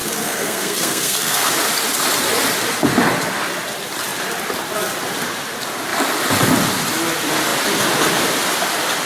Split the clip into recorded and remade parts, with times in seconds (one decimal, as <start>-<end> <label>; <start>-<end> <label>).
0.0-1.5 remade; 1.5-9.1 recorded